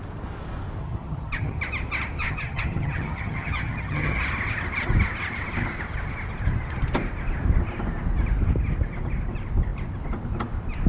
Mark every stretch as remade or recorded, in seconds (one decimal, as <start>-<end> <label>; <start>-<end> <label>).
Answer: 0.0-0.8 recorded; 0.8-1.6 remade; 1.6-2.2 recorded; 2.2-4.2 remade; 4.2-10.9 recorded